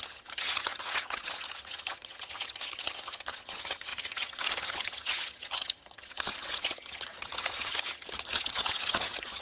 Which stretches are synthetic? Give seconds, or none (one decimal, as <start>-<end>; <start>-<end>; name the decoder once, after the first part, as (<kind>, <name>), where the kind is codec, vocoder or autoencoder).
0.0-9.4 (vocoder, HiFi-GAN)